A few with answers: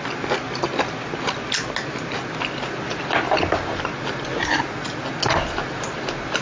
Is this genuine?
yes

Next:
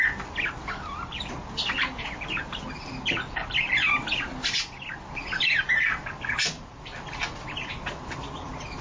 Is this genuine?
yes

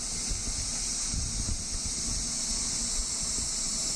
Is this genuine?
yes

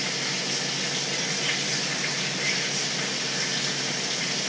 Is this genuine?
yes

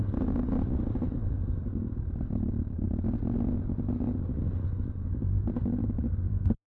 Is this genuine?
yes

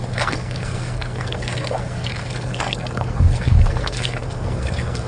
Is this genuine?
no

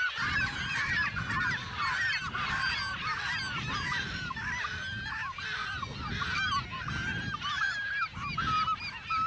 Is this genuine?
yes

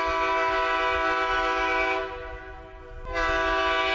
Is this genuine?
yes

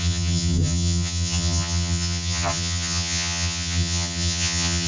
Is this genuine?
no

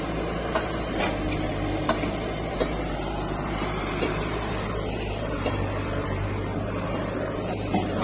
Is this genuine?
no